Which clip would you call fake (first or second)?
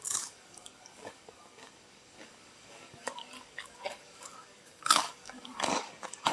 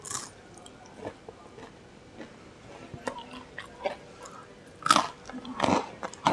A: first